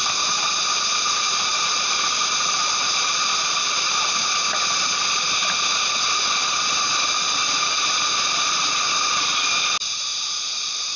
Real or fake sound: real